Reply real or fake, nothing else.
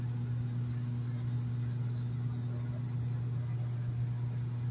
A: real